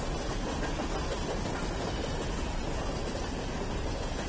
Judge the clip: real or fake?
real